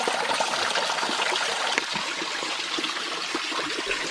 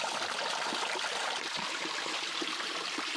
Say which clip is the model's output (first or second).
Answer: second